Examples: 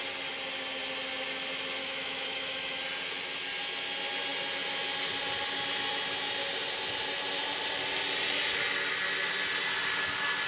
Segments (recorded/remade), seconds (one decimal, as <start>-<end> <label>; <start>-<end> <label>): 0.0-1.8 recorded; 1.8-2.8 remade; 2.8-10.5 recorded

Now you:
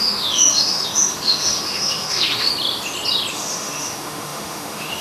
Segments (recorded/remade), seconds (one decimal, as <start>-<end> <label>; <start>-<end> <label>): 0.0-2.5 remade; 2.5-3.3 recorded; 3.3-5.0 remade

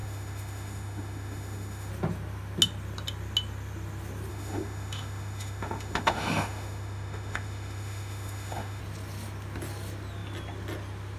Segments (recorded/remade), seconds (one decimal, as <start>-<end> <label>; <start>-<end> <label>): 0.0-1.9 remade; 1.9-4.3 recorded; 4.3-8.8 remade; 8.8-11.2 recorded